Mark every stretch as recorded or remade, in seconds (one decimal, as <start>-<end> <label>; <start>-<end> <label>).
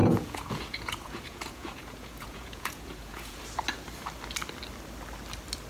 0.0-3.4 remade; 3.4-5.7 recorded